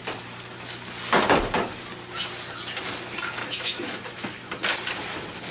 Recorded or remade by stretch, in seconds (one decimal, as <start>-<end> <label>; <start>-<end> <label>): 0.0-3.4 recorded; 3.4-4.5 remade; 4.5-5.5 recorded